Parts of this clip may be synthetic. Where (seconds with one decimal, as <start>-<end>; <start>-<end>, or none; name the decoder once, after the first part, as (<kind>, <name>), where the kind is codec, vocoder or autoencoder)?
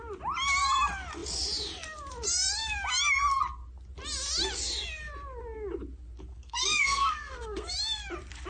6.3-7.7 (codec, SNAC)